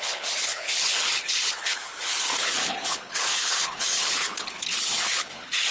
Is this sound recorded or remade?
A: remade